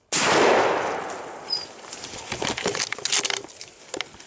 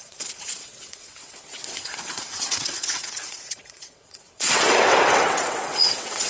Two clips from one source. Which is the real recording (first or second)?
first